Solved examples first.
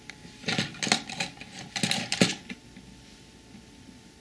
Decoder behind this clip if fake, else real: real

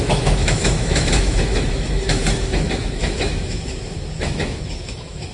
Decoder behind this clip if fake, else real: fake, autoencoder, DAC-VAE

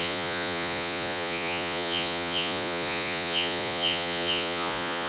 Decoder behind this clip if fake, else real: fake, vocoder, Vocos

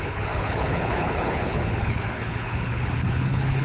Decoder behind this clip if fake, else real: fake, codec, HILCodec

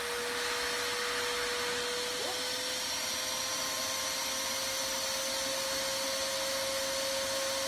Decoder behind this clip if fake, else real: real